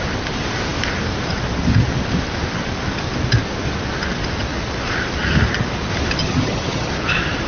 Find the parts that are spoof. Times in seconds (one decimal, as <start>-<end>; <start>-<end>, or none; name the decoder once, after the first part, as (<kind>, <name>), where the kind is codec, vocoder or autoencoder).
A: 6.2-6.9 (vocoder, HiFi-GAN)